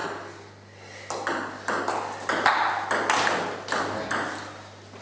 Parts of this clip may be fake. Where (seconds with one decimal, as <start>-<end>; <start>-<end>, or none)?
none